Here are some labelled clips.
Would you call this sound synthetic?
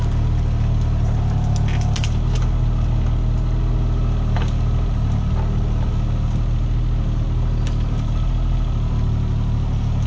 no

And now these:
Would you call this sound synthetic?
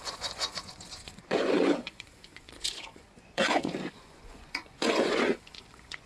yes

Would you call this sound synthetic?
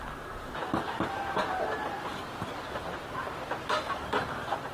no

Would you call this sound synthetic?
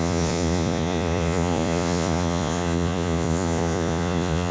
yes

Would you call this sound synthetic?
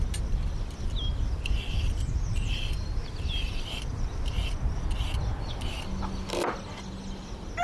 no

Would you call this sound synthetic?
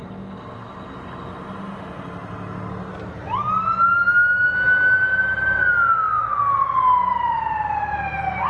no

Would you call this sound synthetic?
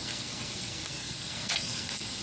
yes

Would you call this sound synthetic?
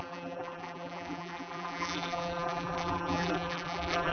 yes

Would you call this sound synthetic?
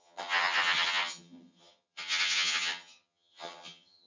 yes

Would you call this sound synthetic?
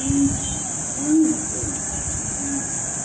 no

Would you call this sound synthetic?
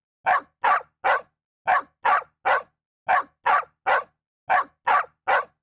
no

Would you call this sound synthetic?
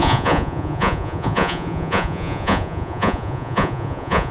yes